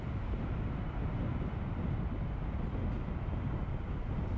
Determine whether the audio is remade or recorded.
recorded